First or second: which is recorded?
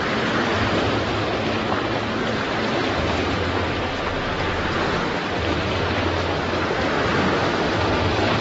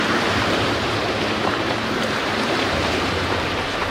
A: first